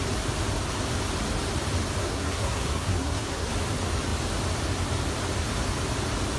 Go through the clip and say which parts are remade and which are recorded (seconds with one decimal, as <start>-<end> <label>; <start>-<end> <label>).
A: 0.0-2.0 recorded; 2.0-3.5 remade; 3.5-6.4 recorded